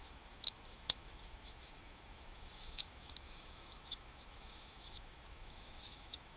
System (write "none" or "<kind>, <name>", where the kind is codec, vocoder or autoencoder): autoencoder, DAC-VAE